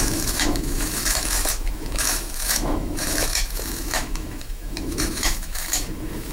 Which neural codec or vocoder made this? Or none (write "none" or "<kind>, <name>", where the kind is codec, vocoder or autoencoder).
autoencoder, DAC-VAE